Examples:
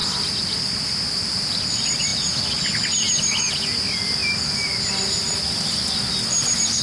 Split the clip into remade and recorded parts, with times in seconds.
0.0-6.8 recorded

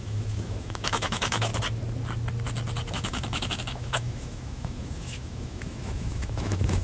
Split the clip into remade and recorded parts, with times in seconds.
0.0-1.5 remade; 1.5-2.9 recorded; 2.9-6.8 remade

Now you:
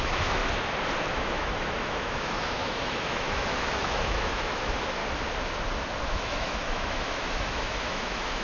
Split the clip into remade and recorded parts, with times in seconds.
0.0-0.4 remade; 0.4-1.1 recorded; 1.1-5.0 remade; 5.0-6.0 recorded; 6.0-8.4 remade